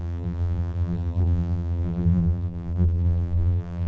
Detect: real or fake fake